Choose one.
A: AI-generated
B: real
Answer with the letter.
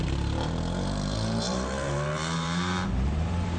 A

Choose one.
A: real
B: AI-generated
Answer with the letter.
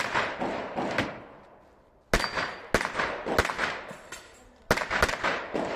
A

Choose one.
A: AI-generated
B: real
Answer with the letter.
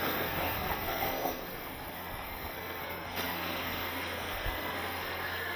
A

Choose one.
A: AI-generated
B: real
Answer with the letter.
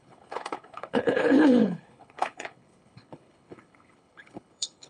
A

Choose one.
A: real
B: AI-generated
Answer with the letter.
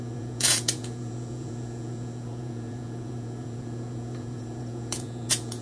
B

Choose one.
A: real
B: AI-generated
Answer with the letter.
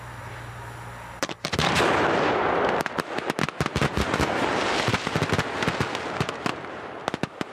A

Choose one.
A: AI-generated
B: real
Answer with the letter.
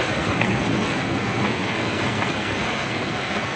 A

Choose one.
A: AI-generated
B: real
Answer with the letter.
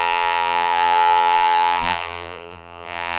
A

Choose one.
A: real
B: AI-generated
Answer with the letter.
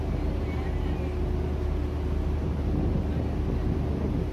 A